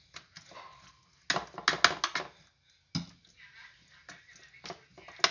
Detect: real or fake real